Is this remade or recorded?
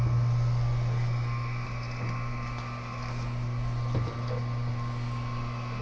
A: recorded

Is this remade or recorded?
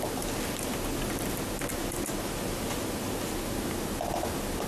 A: recorded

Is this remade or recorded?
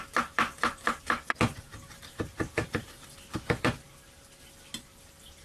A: remade